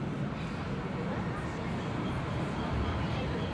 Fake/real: real